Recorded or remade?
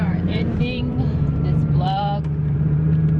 remade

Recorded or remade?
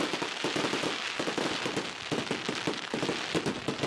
recorded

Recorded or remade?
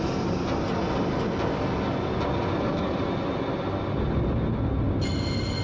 recorded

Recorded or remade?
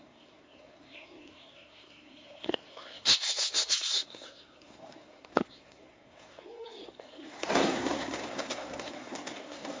remade